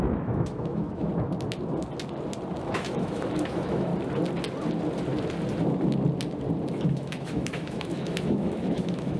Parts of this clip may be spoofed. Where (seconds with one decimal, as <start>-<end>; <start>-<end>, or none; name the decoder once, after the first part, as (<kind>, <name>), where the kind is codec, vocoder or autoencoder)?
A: 0.0-1.1 (autoencoder, DAC-VAE); 2.6-3.9; 6.7-9.2